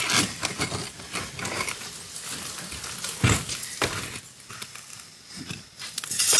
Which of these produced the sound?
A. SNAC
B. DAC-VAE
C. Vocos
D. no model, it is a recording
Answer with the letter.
D